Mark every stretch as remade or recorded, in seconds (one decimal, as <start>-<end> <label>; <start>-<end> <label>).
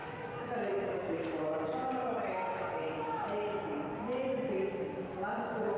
0.0-0.9 remade; 0.9-5.8 recorded